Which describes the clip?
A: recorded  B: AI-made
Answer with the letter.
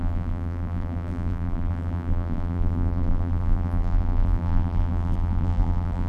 B